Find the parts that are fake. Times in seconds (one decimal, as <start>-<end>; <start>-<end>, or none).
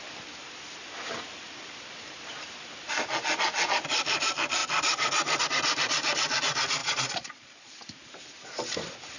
6.8-7.7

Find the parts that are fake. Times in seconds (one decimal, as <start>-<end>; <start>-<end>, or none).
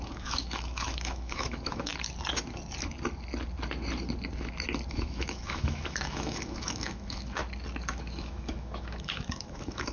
0.0-1.9; 4.9-7.4; 7.9-9.9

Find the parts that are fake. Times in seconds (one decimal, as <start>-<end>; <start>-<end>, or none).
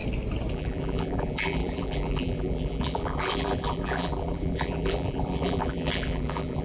0.5-6.6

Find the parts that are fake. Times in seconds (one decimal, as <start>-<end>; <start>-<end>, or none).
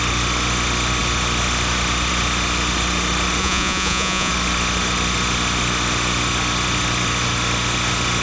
3.4-4.3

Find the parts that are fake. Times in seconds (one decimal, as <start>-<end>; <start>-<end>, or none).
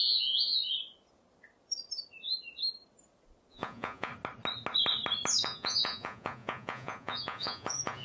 0.0-0.6; 3.5-4.1; 5.4-8.0